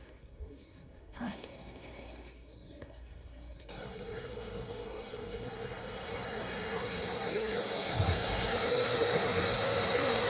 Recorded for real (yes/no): no